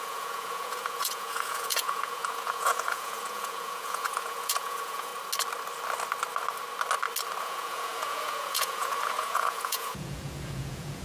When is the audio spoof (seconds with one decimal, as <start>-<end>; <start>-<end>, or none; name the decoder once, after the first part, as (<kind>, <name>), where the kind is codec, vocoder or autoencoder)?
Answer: 0.0-5.1 (vocoder, Vocos); 7.4-11.0